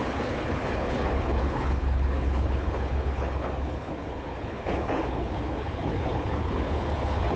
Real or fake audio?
fake